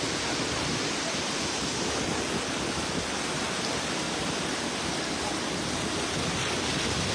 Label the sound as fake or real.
real